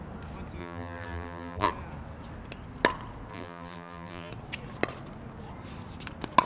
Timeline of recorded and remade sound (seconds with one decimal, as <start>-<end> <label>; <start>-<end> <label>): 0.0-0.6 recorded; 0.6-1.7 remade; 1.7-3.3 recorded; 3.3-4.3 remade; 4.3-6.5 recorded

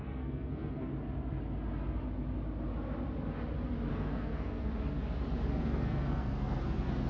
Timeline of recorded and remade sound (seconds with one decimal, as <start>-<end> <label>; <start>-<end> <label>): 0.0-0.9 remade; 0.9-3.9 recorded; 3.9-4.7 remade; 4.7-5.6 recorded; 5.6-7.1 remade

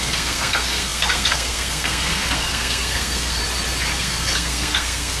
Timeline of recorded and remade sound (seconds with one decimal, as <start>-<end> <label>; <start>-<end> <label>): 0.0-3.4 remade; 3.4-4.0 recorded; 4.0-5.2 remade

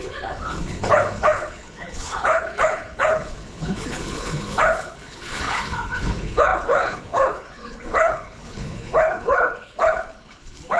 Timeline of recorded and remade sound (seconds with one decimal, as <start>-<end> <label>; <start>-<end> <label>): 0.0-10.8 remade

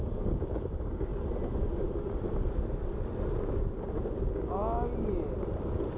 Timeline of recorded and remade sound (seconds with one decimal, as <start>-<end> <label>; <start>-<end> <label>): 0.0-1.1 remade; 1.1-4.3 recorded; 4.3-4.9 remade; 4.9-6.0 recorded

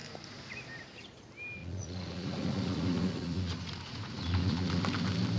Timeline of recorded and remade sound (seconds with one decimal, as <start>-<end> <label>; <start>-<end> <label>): 0.0-1.6 recorded; 1.6-4.8 remade; 4.8-5.4 recorded